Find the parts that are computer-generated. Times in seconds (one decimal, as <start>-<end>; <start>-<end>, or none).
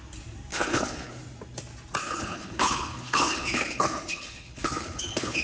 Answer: 0.5-1.1; 2.0-5.4